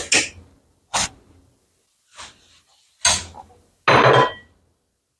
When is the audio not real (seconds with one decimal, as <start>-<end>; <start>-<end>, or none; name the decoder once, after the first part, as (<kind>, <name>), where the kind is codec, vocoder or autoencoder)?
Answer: none